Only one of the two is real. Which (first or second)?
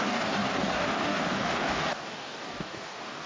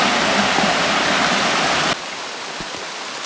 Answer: second